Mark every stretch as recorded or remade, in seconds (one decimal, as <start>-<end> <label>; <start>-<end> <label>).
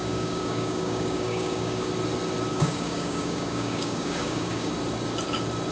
0.0-1.9 remade; 1.9-2.5 recorded; 2.5-4.7 remade; 4.7-5.7 recorded